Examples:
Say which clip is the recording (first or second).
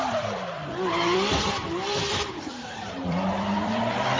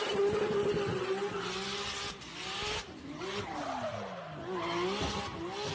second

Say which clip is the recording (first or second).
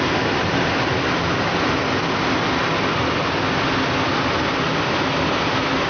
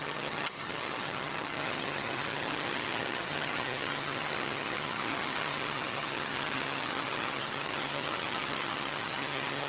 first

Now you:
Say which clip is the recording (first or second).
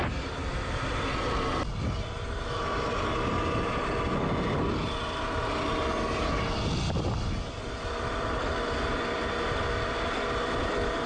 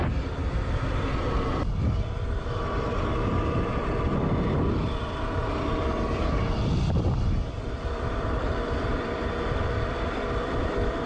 first